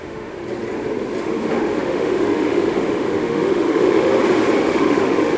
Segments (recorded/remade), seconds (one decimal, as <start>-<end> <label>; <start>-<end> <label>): 0.0-0.4 remade; 0.4-1.2 recorded; 1.2-4.1 remade; 4.1-4.6 recorded; 4.6-5.4 remade